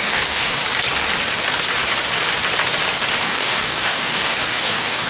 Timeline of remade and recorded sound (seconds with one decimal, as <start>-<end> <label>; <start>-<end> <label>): 0.0-0.6 remade; 0.6-3.2 recorded; 3.2-5.1 remade